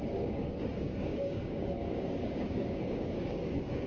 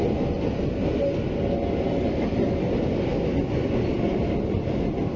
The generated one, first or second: first